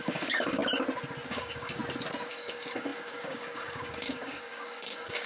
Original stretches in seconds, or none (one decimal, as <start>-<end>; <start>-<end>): 0.6-1.3; 1.8-2.3